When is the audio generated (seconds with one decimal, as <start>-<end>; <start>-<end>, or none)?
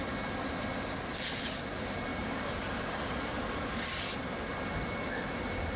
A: 2.1-4.6